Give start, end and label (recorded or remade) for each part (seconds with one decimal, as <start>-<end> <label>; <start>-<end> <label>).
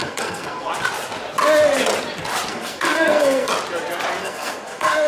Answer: 0.0-0.7 remade; 0.7-2.5 recorded; 2.5-3.5 remade; 3.5-4.2 recorded; 4.2-5.1 remade